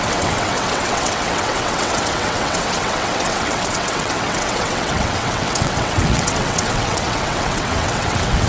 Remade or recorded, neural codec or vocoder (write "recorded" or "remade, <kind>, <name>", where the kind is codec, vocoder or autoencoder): remade, vocoder, WaveNeXt